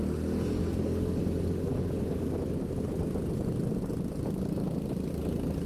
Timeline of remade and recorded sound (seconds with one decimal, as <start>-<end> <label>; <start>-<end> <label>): 0.0-0.6 recorded; 0.6-1.2 remade; 1.2-5.7 recorded